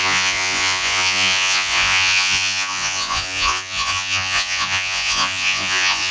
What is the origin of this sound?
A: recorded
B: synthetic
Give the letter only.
B